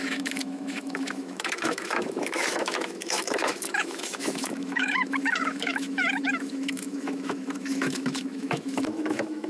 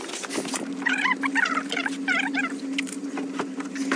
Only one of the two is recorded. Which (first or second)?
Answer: second